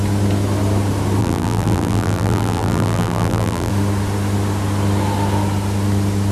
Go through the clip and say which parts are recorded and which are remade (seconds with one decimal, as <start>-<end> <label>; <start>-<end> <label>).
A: 0.0-1.2 recorded; 1.2-3.7 remade; 3.7-6.3 recorded